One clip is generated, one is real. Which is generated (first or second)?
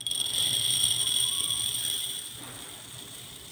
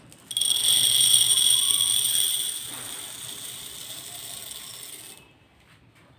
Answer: first